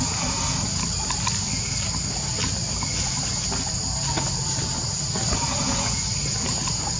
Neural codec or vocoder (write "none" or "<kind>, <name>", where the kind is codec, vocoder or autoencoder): none